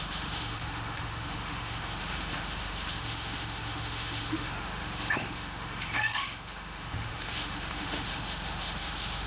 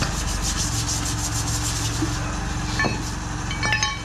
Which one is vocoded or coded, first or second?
first